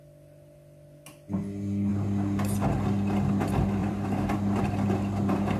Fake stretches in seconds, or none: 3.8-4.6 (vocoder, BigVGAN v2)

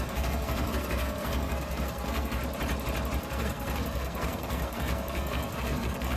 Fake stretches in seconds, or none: 0.0-2.4 (codec, SNAC); 3.2-6.2

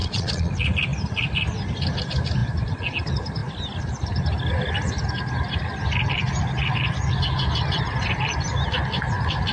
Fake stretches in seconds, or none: 0.0-0.5 (vocoder, Vocos)

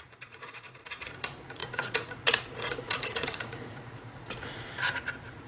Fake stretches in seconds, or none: 0.0-5.5 (vocoder, Vocos)